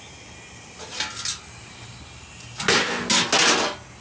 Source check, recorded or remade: recorded